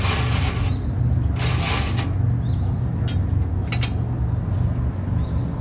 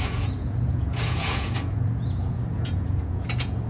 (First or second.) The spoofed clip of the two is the second